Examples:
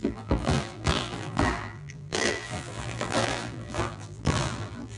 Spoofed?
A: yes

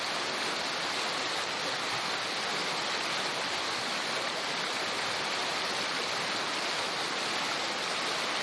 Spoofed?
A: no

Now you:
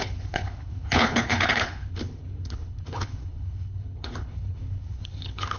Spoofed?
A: yes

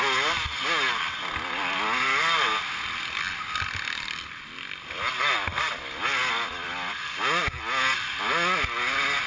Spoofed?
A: no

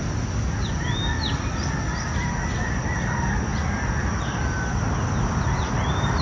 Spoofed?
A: no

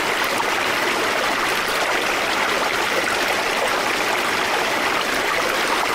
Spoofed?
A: no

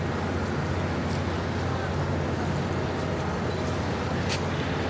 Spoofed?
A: no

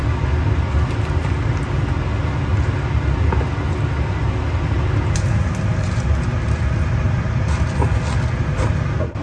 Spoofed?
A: no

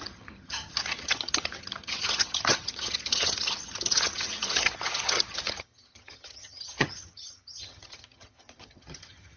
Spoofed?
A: yes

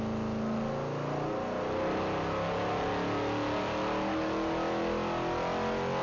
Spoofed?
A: no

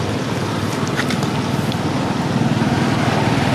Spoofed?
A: no